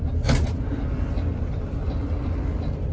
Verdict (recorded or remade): recorded